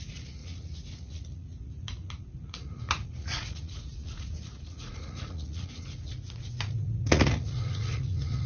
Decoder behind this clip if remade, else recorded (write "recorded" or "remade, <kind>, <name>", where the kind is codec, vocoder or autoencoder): remade, vocoder, Vocos